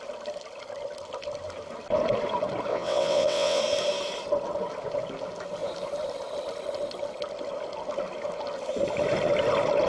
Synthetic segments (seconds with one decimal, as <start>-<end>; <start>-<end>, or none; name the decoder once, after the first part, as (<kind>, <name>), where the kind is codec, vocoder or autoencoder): 2.7-3.6 (vocoder, WaveNeXt)

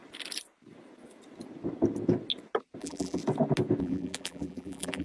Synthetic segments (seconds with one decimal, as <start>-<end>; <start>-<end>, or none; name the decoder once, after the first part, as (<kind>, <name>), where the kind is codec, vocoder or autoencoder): 2.8-3.2 (vocoder, BigVGAN v2); 3.8-5.0

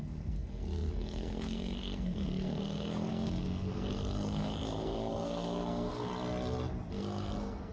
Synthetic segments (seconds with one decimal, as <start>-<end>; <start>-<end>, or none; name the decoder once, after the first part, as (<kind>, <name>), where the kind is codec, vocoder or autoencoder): 0.0-6.1 (codec, SNAC); 6.9-7.7

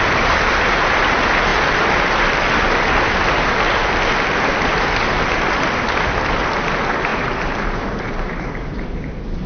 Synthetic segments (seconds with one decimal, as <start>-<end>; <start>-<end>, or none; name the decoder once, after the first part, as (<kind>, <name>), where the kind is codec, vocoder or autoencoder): none

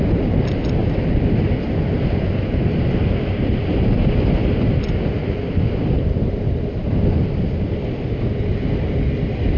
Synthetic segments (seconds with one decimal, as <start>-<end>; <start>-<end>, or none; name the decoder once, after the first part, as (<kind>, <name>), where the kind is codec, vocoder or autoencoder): none

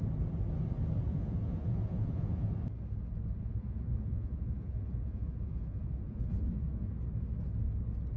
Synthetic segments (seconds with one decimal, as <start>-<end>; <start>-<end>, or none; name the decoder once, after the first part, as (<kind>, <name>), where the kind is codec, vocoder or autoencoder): 1.1-2.6 (vocoder, Vocos); 3.4-6.9